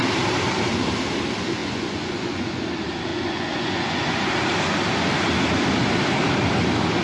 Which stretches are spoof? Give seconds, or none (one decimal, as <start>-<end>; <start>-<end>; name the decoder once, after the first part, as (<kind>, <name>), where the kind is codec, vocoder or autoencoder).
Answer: 1.6-2.6 (vocoder, Vocos); 3.1-4.3